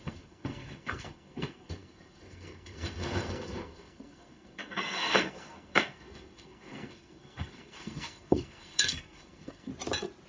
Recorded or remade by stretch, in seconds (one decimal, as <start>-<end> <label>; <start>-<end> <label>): 0.0-9.7 remade; 9.7-10.3 recorded

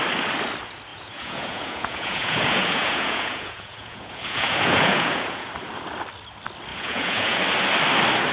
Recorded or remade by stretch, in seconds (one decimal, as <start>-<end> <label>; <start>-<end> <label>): 0.0-0.9 recorded; 0.9-5.5 remade; 5.5-6.7 recorded; 6.7-7.4 remade; 7.4-8.3 recorded